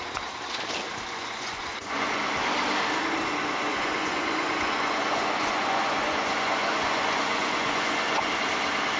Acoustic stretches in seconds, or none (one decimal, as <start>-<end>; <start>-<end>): 0.0-1.1; 2.2-3.7; 8.3-9.0